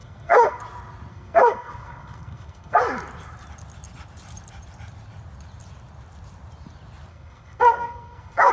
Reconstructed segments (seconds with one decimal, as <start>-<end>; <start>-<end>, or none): 0.0-0.6; 1.1-2.8; 7.1-8.5